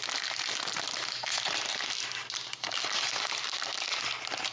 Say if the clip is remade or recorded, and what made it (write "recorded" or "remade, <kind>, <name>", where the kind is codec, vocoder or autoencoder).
recorded